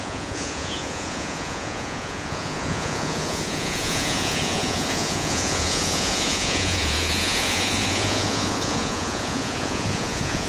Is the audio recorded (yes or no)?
no